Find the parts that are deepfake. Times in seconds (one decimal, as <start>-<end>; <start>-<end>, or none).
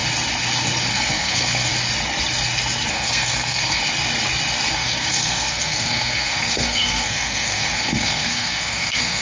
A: 0.9-1.7; 2.9-3.8; 4.7-9.2